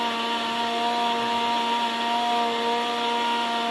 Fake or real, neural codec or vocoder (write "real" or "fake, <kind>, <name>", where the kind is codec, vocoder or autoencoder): real